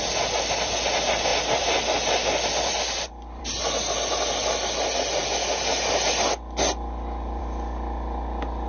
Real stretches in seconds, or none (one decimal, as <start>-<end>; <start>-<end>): 0.0-1.3; 3.4-8.7